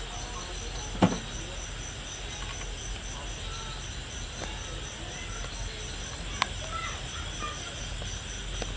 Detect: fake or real real